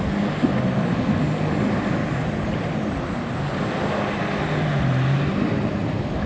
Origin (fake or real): real